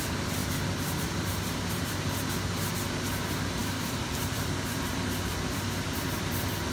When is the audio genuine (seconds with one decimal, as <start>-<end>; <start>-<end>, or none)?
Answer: 0.0-0.4; 1.7-3.6; 6.3-6.7